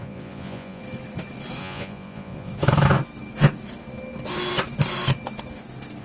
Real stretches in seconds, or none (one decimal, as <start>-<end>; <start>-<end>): 0.8-1.6; 2.5-6.0